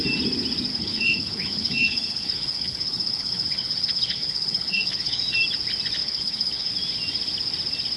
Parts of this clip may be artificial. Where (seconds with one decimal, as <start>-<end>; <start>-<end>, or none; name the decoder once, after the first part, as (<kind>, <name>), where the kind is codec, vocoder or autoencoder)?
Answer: 0.7-5.2 (codec, HILCodec); 6.0-6.7